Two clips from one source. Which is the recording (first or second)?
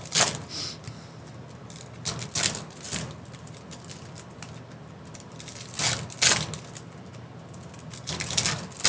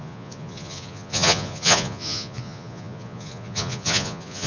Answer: first